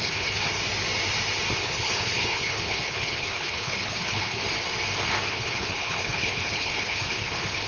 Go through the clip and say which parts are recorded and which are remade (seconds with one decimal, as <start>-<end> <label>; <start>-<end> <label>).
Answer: 0.0-0.6 remade; 0.6-1.6 recorded; 1.6-4.4 remade; 4.4-5.3 recorded; 5.3-7.7 remade